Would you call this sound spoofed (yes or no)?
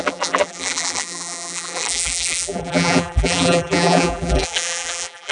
yes